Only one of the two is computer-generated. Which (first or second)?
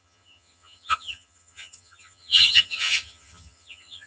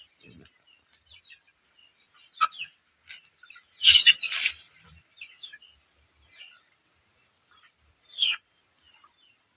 first